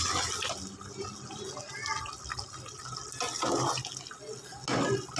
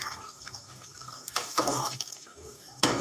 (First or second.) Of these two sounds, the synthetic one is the second